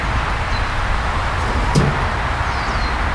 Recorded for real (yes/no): no